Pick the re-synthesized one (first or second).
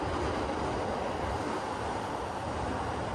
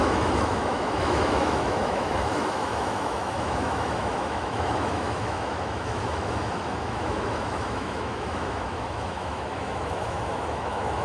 second